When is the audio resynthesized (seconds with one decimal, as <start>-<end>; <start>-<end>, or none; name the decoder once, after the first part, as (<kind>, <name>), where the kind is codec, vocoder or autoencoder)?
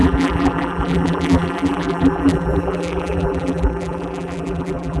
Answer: 0.0-5.0 (vocoder, BigVGAN v2)